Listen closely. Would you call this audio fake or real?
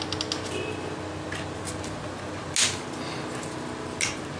real